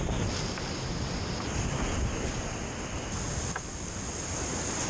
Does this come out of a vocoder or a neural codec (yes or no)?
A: no